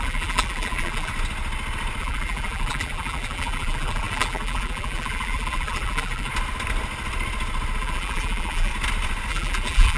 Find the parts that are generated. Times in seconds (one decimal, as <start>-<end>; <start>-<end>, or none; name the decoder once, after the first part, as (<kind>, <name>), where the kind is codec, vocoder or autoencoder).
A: 0.0-1.1 (vocoder, BigVGAN v2); 2.0-6.3; 7.8-8.7; 9.3-10.0